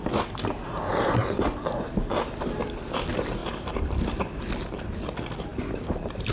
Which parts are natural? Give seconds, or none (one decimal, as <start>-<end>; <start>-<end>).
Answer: 0.0-6.3